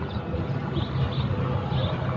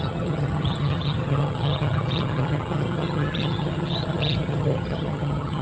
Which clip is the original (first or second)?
first